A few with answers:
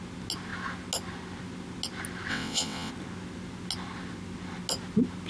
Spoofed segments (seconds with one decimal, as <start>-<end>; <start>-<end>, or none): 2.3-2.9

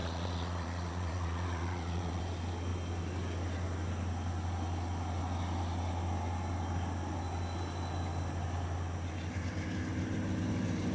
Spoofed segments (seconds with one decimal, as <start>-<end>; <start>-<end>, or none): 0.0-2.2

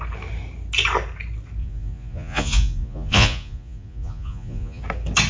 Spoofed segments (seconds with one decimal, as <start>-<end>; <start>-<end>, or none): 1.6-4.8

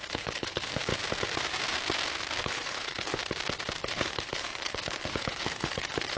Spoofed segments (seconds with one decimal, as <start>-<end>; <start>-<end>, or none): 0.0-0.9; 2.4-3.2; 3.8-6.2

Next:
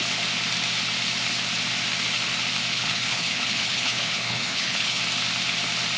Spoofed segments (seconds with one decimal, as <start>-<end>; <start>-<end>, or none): 2.7-5.0